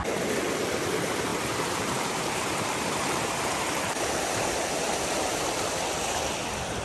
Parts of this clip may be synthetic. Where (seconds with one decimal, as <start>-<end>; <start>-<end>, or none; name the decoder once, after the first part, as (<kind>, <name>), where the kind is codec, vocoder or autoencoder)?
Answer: 1.3-5.4 (vocoder, BigVGAN v2)